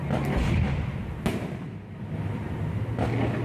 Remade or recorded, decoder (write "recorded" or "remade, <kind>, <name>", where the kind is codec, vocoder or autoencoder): recorded